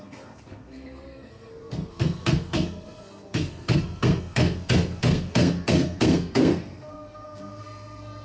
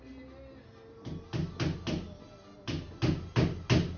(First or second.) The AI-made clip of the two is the first